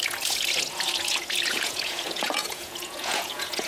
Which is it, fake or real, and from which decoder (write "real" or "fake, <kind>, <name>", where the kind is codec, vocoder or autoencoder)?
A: fake, vocoder, Vocos